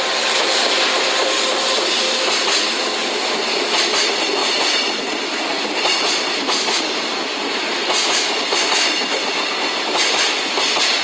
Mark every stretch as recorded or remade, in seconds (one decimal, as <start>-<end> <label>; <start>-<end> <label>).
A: 0.0-11.0 recorded